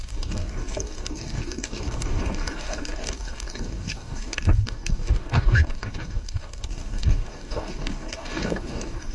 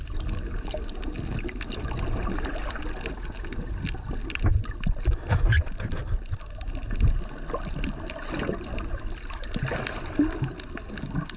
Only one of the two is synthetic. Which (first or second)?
first